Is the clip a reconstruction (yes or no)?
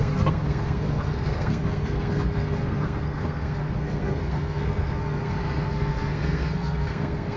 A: yes